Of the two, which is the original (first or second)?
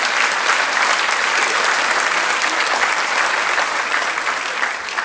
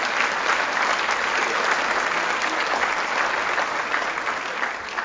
second